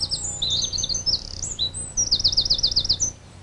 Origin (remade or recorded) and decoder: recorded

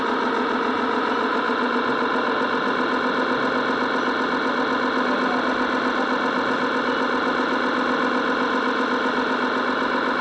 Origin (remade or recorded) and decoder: recorded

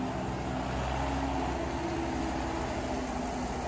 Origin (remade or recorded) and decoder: recorded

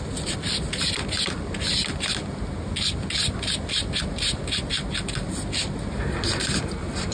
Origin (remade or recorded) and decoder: recorded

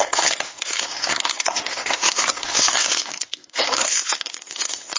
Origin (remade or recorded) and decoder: remade, codec, SNAC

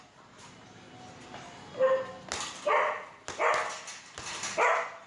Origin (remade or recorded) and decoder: recorded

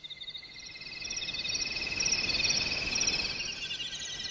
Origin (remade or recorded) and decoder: recorded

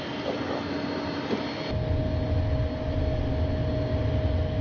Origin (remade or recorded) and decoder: recorded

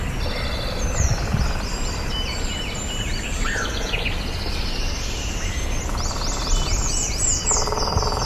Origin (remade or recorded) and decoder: recorded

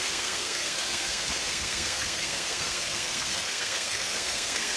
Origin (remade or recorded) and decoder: remade, codec, SNAC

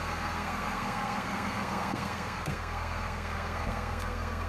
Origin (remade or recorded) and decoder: remade, codec, SNAC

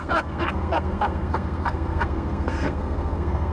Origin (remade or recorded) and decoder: remade, codec, SNAC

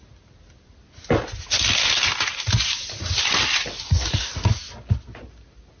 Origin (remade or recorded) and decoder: recorded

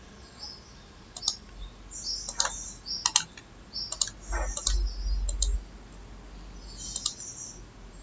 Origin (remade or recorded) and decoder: recorded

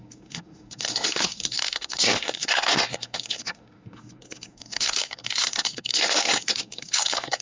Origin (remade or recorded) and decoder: remade, codec, SNAC